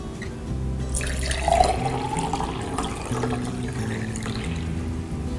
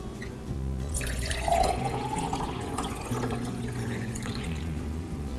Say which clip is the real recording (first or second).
first